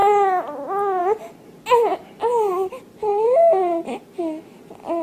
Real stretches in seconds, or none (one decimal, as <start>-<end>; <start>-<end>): 0.0-3.1; 4.2-5.0